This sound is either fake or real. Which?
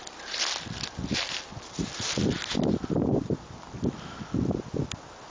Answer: real